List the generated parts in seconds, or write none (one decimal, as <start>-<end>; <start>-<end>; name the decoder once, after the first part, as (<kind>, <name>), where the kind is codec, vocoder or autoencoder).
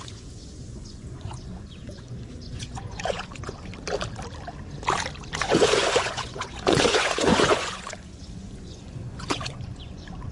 0.0-3.7 (vocoder, Vocos); 5.4-10.3